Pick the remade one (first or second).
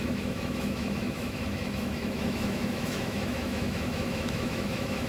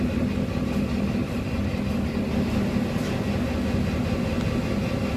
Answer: first